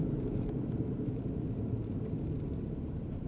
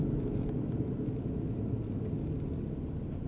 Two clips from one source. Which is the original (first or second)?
second